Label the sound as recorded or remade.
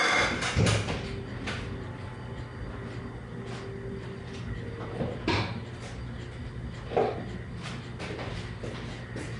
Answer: recorded